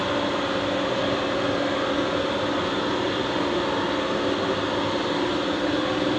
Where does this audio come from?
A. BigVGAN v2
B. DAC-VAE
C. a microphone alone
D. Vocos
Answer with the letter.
C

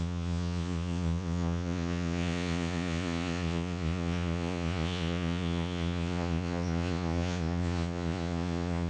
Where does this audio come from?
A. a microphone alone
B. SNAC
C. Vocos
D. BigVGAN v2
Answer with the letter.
C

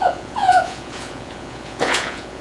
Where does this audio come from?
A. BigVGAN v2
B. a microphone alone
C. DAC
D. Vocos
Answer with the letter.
D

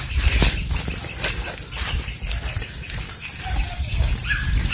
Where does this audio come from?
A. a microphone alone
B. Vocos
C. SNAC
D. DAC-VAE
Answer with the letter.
A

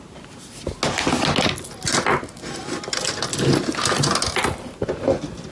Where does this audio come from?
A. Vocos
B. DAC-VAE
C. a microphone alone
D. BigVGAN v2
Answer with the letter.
C